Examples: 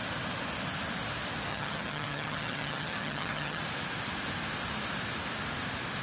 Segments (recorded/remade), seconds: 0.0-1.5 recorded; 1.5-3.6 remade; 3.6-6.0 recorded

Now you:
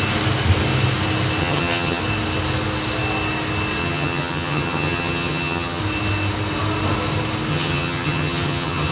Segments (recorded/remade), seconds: 0.0-1.4 recorded; 1.4-2.0 remade; 2.0-3.8 recorded; 3.8-5.8 remade; 5.8-7.5 recorded; 7.5-8.9 remade

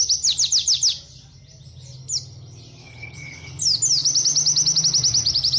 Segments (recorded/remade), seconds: 0.0-2.8 recorded; 2.8-3.6 remade; 3.6-5.6 recorded

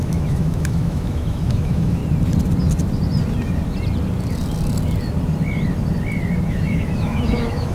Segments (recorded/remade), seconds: 0.0-2.0 remade; 2.0-6.5 recorded; 6.5-7.7 remade

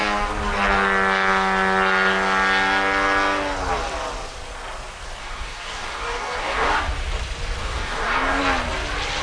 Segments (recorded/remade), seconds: 0.0-5.2 recorded; 5.2-6.9 remade; 6.9-7.6 recorded; 7.6-8.4 remade; 8.4-9.2 recorded